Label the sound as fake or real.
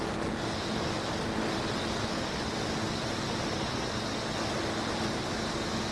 real